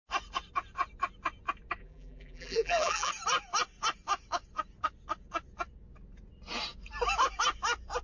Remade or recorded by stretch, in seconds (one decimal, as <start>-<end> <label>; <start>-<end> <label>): 0.0-1.8 recorded; 1.8-3.1 remade; 3.1-8.0 recorded